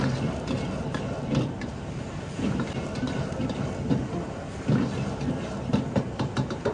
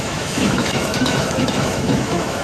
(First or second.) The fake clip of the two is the second